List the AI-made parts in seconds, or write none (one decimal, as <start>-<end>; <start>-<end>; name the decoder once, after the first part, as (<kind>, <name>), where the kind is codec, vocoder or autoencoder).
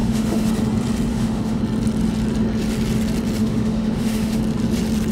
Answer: 0.0-0.5 (autoencoder, DAC-VAE); 1.1-1.6; 3.4-4.4